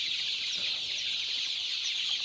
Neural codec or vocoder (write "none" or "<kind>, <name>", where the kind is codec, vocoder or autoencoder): none